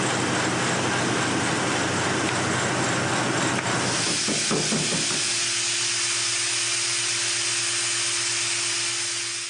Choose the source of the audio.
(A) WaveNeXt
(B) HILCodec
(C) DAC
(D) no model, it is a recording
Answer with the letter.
D